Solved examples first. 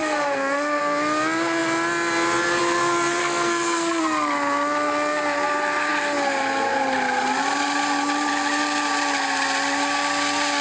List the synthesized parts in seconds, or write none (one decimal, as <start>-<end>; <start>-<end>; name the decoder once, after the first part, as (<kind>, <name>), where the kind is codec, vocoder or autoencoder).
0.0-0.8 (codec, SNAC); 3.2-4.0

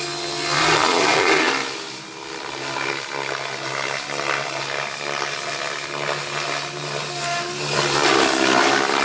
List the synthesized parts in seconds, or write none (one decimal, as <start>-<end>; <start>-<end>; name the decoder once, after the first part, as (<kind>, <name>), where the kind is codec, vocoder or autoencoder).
0.6-1.5 (vocoder, Vocos)

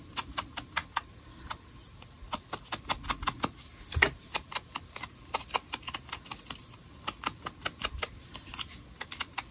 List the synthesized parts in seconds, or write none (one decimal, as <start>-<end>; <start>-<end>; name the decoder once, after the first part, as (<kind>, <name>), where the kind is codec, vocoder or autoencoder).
none

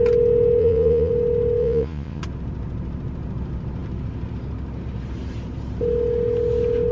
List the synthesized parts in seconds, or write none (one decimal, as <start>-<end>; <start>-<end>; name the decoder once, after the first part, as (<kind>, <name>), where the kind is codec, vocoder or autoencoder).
0.6-1.1 (vocoder, Vocos); 1.6-2.2